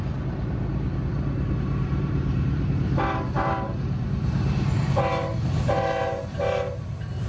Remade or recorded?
remade